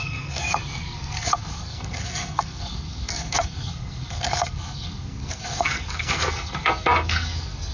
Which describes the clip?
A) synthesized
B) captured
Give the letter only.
A